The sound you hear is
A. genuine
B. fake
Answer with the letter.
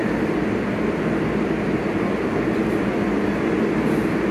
A